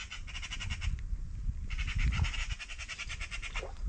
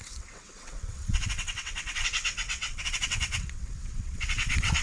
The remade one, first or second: second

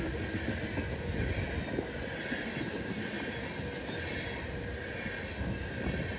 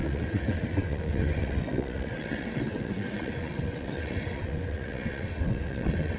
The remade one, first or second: second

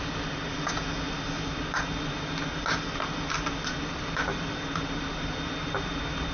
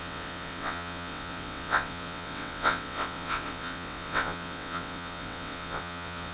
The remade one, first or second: second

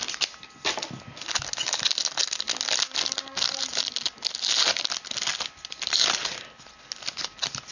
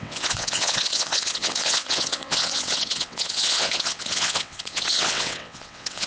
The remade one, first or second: second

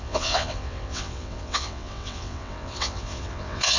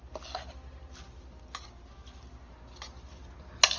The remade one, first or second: first